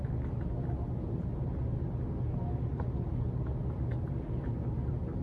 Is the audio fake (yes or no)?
no